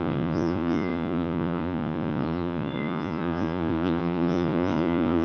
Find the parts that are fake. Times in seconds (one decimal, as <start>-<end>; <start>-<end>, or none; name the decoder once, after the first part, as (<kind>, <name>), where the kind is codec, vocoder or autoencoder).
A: 0.0-5.2 (vocoder, Vocos)